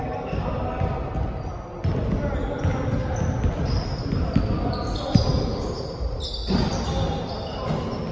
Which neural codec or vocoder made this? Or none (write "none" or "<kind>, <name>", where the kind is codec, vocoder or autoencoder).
none